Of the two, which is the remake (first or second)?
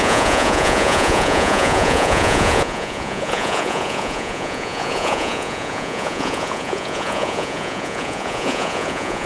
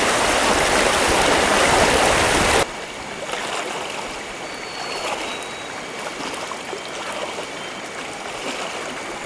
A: first